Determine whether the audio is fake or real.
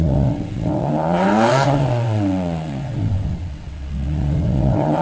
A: fake